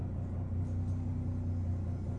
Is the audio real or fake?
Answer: real